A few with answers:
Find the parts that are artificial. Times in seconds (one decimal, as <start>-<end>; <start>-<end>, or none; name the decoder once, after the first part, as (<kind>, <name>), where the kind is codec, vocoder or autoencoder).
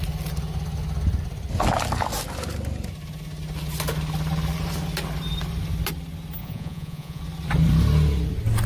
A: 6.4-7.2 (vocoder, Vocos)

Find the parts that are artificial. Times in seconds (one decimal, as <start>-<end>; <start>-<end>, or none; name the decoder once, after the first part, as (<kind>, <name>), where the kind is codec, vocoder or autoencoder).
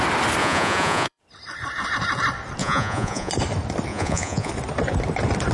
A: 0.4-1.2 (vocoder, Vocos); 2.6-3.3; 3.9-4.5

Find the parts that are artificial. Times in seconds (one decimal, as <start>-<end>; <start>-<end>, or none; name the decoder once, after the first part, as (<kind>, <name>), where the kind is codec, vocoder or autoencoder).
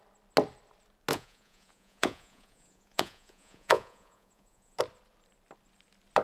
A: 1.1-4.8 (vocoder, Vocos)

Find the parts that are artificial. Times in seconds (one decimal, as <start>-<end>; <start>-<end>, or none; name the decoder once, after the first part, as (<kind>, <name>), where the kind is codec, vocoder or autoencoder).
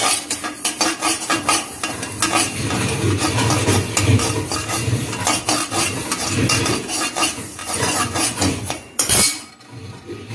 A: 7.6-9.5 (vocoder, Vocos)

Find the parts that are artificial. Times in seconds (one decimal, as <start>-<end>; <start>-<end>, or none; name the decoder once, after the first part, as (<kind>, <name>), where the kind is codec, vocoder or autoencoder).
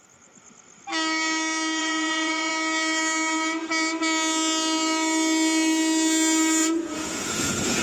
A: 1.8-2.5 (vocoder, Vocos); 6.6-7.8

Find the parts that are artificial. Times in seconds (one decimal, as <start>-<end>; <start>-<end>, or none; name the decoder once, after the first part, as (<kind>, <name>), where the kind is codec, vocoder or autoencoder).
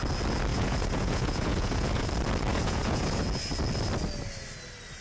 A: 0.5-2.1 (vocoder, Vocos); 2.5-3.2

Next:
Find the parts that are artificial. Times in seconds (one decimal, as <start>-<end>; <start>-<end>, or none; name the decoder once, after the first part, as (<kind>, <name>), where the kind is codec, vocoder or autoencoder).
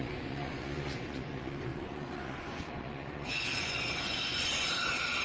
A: 0.0-5.2 (vocoder, Vocos)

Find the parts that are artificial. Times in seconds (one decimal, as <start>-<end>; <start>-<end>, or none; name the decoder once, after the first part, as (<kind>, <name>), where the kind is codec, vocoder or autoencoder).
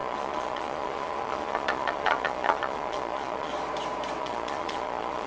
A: 0.0-3.5 (vocoder, Vocos); 4.2-5.3